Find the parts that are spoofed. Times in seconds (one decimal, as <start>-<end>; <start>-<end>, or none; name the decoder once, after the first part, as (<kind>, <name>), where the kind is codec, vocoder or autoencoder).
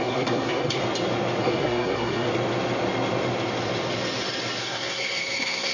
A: 0.0-0.8 (codec, SNAC); 1.4-2.3; 4.6-5.7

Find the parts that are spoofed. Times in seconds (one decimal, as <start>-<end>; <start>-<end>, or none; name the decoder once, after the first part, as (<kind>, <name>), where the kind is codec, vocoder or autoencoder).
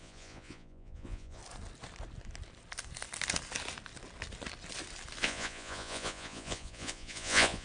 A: 0.0-1.4 (vocoder, Vocos); 5.2-7.6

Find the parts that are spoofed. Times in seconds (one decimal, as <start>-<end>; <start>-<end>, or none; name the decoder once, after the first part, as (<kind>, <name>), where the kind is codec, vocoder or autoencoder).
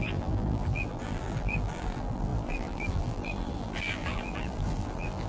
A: 0.0-5.3 (vocoder, BigVGAN v2)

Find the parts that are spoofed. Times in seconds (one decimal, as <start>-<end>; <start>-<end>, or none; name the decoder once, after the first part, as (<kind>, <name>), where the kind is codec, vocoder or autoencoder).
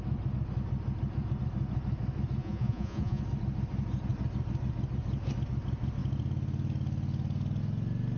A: 2.4-3.2 (vocoder, Vocos)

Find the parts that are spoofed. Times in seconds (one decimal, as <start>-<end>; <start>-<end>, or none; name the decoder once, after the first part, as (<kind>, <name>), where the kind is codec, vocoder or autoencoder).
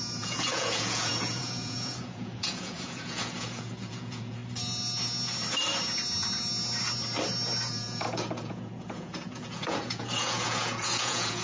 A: 0.0-4.4 (vocoder, Vocos); 7.7-11.4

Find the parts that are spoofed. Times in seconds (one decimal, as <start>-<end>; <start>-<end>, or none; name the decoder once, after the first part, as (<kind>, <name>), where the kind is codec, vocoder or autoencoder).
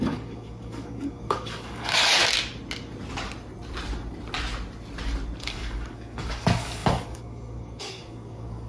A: 0.0-2.2 (codec, DAC); 5.4-8.7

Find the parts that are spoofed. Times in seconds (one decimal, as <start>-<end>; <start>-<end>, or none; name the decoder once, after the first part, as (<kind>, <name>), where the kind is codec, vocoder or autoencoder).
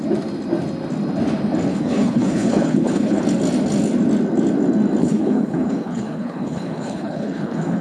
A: 1.7-3.2 (codec, HILCodec); 5.0-7.8